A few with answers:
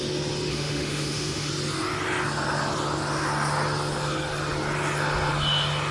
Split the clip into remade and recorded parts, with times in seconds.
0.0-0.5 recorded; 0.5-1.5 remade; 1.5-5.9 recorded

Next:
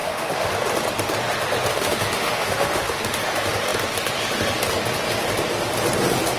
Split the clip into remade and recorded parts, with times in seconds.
0.0-0.5 remade; 0.5-1.7 recorded; 1.7-3.2 remade; 3.2-6.4 recorded

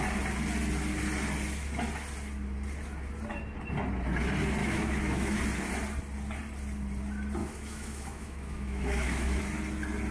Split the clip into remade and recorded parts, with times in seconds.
0.0-4.6 recorded; 4.6-5.4 remade; 5.4-7.4 recorded; 7.4-9.4 remade; 9.4-10.1 recorded

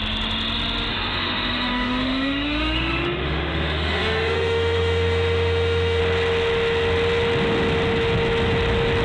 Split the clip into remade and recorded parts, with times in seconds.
0.0-0.9 recorded; 0.9-6.0 remade; 6.0-9.0 recorded

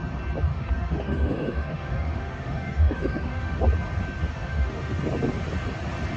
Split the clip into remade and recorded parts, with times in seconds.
0.0-0.5 recorded; 0.5-3.6 remade; 3.6-4.3 recorded; 4.3-5.0 remade; 5.0-6.2 recorded

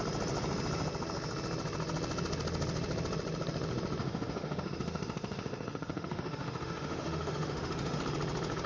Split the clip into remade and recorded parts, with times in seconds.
0.0-4.0 recorded; 4.0-8.0 remade; 8.0-8.7 recorded

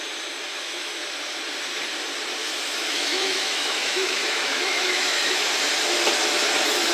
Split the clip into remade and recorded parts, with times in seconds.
0.0-0.5 recorded; 0.5-1.0 remade; 1.0-2.4 recorded; 2.4-5.5 remade; 5.5-6.9 recorded

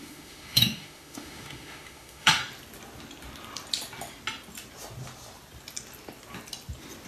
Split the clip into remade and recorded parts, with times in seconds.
0.0-2.4 remade; 2.4-7.1 recorded